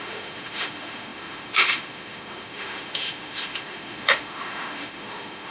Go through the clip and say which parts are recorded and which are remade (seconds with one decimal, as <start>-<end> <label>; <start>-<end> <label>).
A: 0.0-5.5 remade